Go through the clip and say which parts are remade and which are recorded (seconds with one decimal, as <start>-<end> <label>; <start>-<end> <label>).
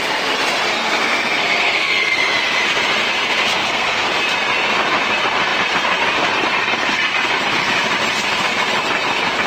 0.0-0.8 recorded; 0.8-2.2 remade; 2.2-3.6 recorded; 3.6-4.1 remade; 4.1-9.5 recorded